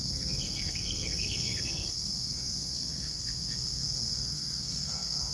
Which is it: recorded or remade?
remade